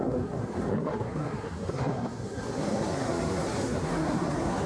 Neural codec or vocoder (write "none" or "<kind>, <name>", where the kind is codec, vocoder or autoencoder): codec, SNAC